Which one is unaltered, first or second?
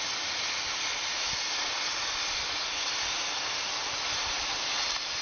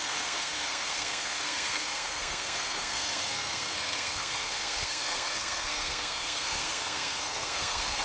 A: first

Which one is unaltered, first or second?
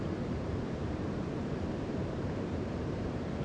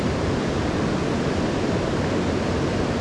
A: second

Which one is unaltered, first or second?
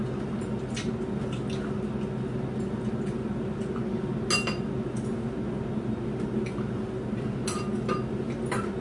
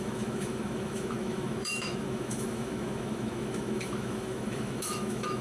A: first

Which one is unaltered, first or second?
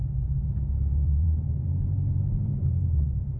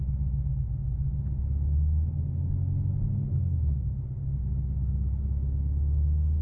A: second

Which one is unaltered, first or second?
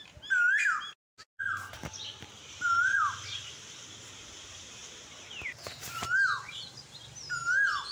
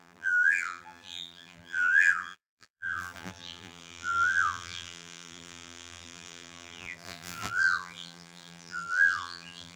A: first